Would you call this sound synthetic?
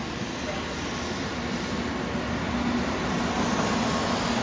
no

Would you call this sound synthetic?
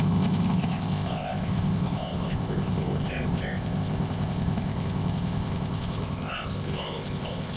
yes